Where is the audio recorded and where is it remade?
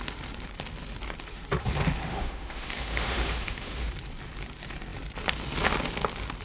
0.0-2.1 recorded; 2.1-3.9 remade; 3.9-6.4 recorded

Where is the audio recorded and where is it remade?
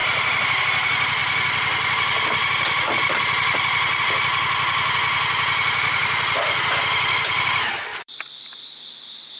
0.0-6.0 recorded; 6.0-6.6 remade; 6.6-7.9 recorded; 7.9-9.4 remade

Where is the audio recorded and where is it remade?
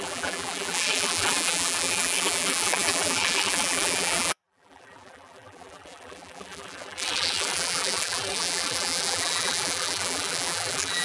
0.0-11.0 remade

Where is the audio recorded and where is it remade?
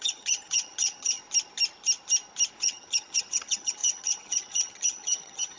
0.0-1.2 remade; 1.2-2.6 recorded; 2.6-5.6 remade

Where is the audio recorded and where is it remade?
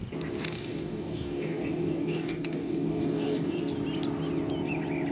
0.0-0.5 recorded; 0.5-3.6 remade; 3.6-5.1 recorded